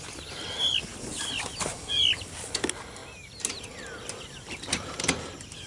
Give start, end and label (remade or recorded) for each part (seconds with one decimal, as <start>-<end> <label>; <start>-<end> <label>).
0.0-5.7 recorded